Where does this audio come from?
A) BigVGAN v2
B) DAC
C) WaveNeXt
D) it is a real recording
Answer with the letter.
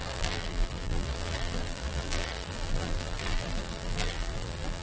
A